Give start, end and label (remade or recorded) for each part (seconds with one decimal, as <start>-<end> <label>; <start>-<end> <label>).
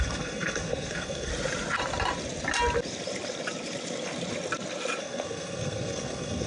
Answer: 0.0-1.3 remade; 1.3-5.0 recorded; 5.0-6.5 remade